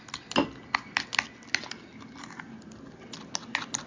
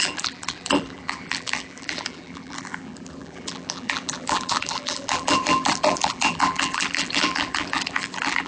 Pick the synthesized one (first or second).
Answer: second